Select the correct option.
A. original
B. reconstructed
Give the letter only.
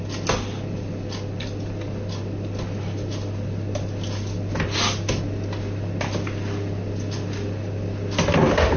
A